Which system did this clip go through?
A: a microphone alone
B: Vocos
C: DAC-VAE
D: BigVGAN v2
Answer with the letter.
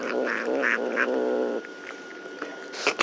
D